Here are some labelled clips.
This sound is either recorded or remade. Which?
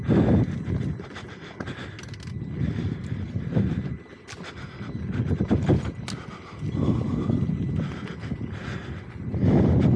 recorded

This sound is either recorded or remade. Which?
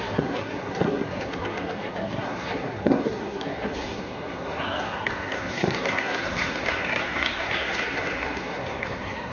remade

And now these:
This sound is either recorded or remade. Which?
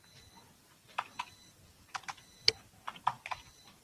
remade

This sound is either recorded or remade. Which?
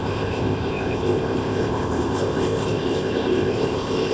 remade